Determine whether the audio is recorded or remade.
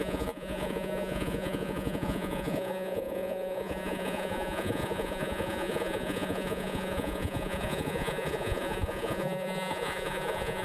remade